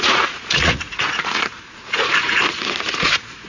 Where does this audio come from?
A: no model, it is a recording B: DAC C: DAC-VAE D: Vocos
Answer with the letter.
D